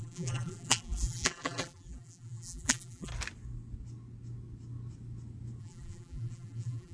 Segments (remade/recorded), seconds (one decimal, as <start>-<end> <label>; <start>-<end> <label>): 0.0-3.1 remade; 3.1-5.6 recorded; 5.6-6.9 remade